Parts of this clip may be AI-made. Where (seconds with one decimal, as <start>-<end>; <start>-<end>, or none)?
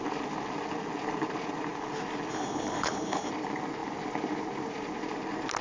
2.3-3.3